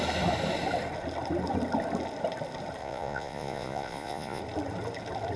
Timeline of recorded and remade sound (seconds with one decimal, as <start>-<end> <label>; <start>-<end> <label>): 0.0-2.8 recorded; 2.8-4.4 remade; 4.4-5.4 recorded